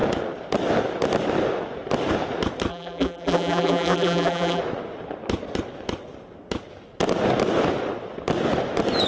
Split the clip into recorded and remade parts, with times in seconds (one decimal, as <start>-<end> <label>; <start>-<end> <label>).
0.0-2.7 recorded; 2.7-4.6 remade; 4.6-9.1 recorded